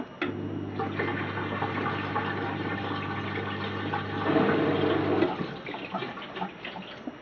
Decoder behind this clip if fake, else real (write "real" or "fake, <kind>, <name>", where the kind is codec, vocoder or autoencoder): real